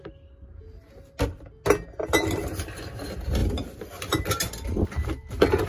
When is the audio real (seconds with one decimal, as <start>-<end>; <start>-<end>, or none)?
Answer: 0.0-5.7